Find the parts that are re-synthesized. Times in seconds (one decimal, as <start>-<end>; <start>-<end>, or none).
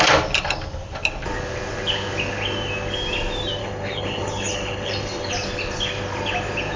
3.6-5.3